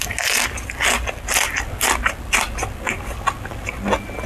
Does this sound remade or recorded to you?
recorded